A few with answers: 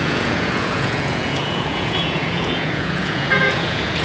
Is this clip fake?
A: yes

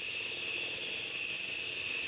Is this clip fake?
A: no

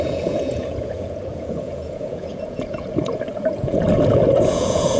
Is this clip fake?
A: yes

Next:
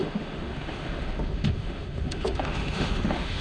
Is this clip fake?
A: yes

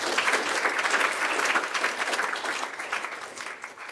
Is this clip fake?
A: no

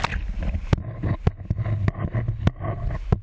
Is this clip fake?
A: no